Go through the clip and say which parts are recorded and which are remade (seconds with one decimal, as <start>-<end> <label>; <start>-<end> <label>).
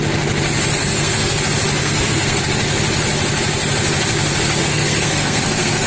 0.0-0.8 recorded; 0.8-1.4 remade; 1.4-1.8 recorded; 1.8-2.4 remade; 2.4-4.6 recorded; 4.6-5.9 remade